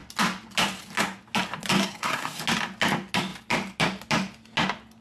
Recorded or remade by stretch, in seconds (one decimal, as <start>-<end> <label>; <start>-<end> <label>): 0.0-1.8 recorded; 1.8-2.4 remade; 2.4-5.0 recorded